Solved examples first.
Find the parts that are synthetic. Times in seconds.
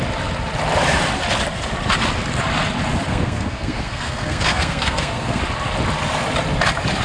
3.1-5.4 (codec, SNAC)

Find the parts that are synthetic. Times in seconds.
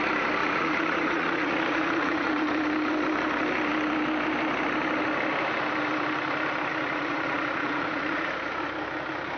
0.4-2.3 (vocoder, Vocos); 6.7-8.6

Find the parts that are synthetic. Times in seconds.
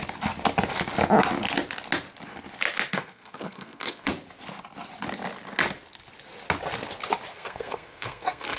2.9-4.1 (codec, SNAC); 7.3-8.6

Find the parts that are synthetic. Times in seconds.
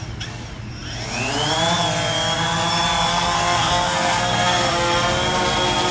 3.1-4.7 (codec, SNAC)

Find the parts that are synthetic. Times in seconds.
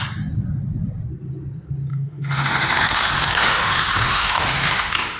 1.9-5.2 (autoencoder, DAC-VAE)